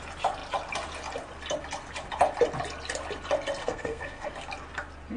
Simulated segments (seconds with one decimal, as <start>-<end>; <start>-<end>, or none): 3.6-4.3